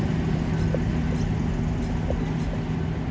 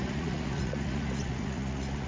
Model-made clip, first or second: second